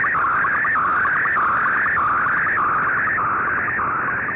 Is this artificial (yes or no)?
no